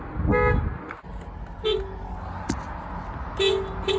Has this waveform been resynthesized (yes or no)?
no